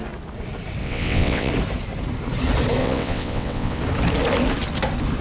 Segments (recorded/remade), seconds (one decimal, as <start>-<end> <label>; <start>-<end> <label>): 0.0-0.8 recorded; 0.8-1.5 remade; 1.5-2.8 recorded; 2.8-3.8 remade; 3.8-5.2 recorded